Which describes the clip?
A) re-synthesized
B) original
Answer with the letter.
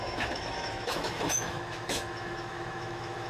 A